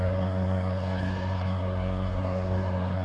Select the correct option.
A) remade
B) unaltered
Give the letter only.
A